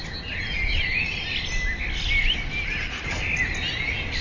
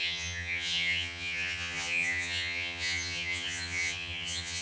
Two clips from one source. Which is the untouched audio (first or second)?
first